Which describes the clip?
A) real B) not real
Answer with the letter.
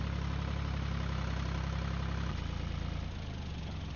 A